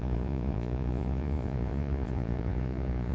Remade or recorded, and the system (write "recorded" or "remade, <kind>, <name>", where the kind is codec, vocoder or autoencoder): remade, vocoder, Vocos